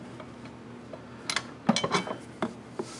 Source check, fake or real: real